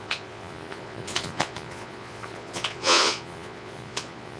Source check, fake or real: fake